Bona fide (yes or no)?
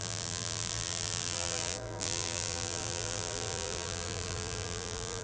no